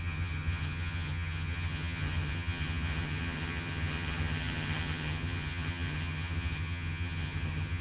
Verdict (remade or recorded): remade